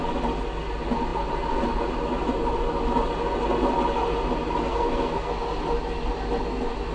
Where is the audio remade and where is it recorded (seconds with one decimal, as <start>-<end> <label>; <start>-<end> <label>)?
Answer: 0.0-4.7 recorded; 4.7-5.3 remade; 5.3-6.9 recorded